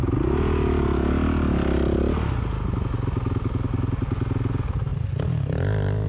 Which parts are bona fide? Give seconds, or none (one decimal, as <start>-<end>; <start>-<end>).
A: 0.0-6.1

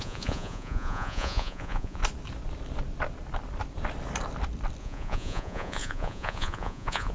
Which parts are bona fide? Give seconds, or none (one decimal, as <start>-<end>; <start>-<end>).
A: 2.0-4.8

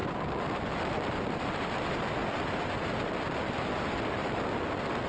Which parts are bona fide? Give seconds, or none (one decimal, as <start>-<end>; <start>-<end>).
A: 0.0-5.1

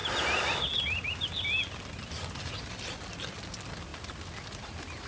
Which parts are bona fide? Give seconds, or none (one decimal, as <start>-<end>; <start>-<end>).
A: 0.0-5.1

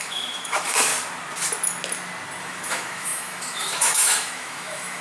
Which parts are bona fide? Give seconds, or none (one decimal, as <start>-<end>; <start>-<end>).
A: 0.9-2.4

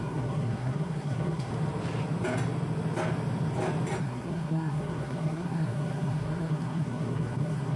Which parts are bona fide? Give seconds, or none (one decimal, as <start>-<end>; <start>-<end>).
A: 1.5-4.0

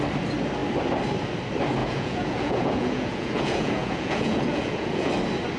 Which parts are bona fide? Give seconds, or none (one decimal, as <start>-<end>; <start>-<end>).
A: 0.0-1.8; 5.1-5.6